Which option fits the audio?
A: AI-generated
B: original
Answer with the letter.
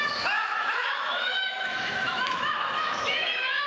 A